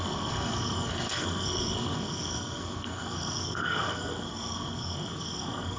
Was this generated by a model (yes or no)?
yes